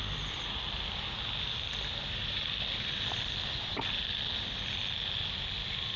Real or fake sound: real